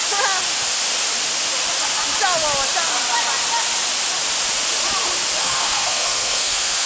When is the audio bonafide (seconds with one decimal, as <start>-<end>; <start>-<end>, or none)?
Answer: 0.0-5.4

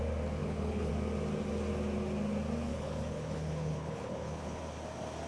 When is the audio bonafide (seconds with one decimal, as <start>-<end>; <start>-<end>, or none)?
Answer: 0.0-0.4; 0.9-2.7; 4.6-5.3

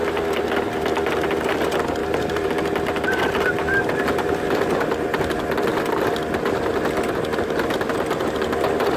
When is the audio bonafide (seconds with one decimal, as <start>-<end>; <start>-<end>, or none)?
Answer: 0.0-2.0; 2.5-9.0

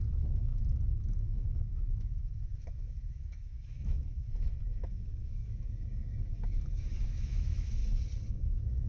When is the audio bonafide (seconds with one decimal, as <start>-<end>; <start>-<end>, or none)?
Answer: 7.8-8.3

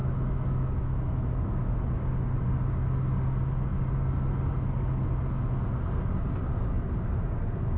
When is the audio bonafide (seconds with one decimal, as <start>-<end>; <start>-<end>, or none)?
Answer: 1.8-7.8

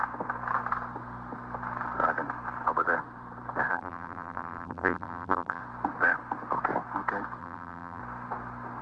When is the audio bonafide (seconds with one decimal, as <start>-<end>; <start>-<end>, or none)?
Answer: 0.0-3.7; 5.6-7.4; 8.0-8.8

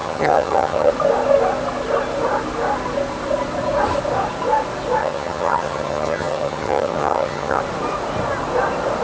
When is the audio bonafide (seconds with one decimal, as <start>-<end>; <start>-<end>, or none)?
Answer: 0.9-5.0; 7.6-9.0